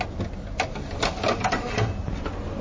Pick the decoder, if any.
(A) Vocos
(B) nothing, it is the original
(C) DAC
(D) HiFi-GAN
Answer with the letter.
B